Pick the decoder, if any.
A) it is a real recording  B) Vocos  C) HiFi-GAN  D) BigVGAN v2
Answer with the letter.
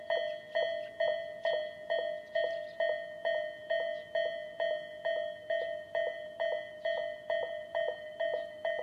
A